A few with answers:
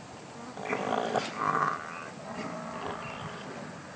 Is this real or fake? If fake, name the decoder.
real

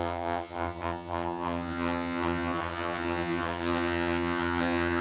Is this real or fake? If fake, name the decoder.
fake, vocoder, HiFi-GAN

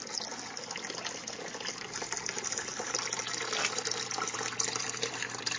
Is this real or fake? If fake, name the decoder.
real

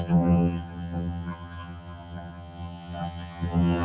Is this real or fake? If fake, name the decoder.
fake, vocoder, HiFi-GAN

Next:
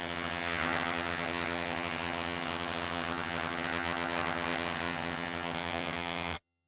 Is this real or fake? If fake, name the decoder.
fake, vocoder, HiFi-GAN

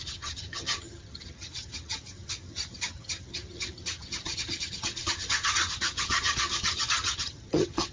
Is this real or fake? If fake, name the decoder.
fake, vocoder, HiFi-GAN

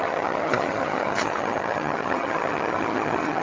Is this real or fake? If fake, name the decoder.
fake, vocoder, HiFi-GAN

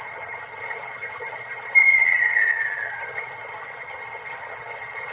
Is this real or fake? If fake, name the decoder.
fake, vocoder, HiFi-GAN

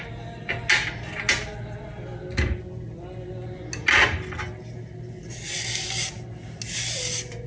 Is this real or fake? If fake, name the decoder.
real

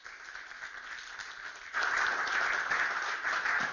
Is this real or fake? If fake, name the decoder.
real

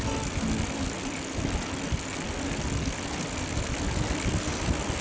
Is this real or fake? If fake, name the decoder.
real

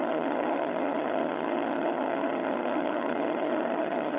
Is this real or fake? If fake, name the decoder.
fake, vocoder, HiFi-GAN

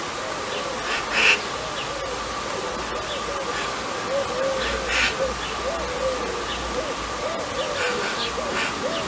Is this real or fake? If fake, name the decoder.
real